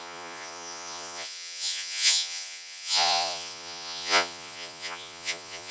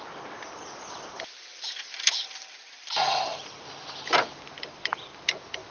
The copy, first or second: first